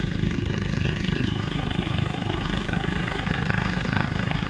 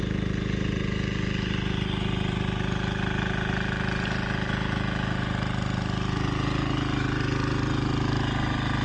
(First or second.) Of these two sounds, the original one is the second